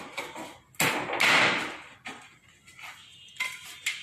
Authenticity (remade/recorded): recorded